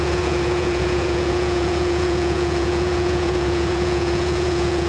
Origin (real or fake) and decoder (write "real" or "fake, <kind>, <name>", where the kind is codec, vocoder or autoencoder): fake, vocoder, Vocos